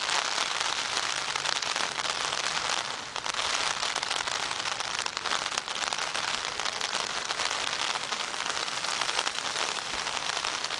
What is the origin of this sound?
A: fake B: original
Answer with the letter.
B